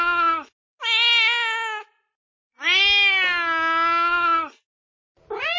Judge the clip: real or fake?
real